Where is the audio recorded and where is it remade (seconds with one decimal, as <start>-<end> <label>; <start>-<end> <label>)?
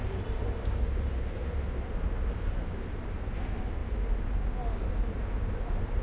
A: 0.0-3.8 remade; 3.8-4.9 recorded; 4.9-6.0 remade